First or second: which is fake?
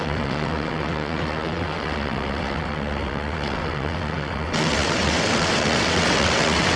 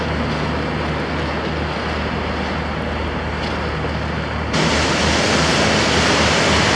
first